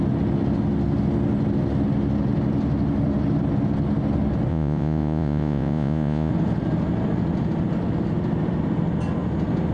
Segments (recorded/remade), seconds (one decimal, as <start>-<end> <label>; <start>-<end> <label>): 0.0-4.5 recorded; 4.5-6.3 remade; 6.3-9.7 recorded